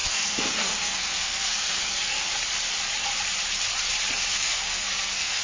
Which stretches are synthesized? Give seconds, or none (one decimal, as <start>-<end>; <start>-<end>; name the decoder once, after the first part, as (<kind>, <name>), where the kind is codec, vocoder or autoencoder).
0.0-2.3 (codec, SNAC); 4.3-5.4